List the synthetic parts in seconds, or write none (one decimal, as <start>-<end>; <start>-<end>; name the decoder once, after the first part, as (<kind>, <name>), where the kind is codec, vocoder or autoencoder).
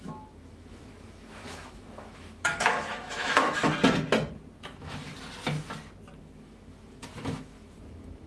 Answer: 0.0-3.7 (autoencoder, DAC-VAE); 4.6-5.1; 6.2-8.3